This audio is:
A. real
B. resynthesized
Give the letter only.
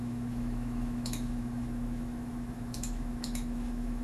B